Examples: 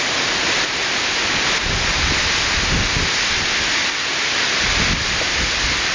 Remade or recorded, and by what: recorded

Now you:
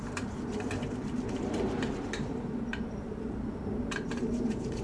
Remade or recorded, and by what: remade, vocoder, BigVGAN v2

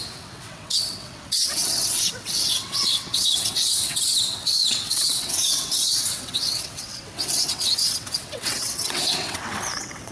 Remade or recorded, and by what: remade, vocoder, WaveNeXt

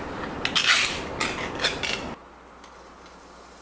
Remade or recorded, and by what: recorded